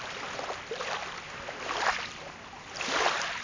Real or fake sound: real